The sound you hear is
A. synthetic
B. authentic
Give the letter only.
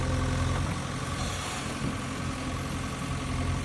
B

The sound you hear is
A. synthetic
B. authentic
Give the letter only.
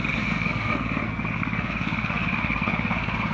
A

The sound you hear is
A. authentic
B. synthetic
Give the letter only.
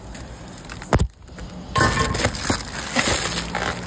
A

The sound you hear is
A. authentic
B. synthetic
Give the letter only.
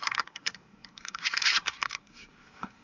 B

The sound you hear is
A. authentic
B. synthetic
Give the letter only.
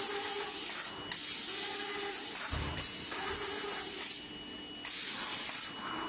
A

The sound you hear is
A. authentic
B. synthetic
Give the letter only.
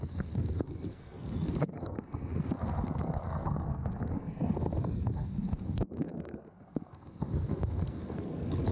B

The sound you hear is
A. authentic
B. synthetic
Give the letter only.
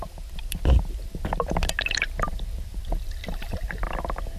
A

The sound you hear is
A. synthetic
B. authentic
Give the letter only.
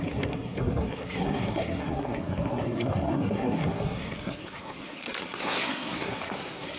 A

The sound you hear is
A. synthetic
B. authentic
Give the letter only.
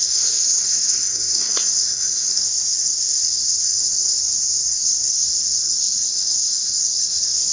A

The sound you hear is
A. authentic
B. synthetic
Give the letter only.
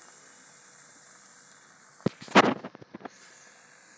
A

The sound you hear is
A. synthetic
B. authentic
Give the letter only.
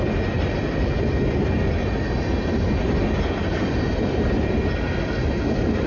B